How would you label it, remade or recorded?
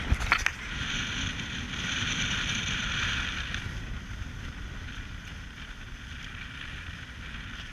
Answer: recorded